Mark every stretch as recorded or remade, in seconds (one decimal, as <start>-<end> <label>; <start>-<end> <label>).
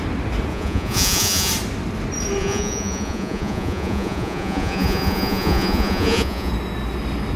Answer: 0.0-0.5 recorded; 0.5-1.5 remade; 1.5-2.4 recorded; 2.4-6.5 remade; 6.5-7.4 recorded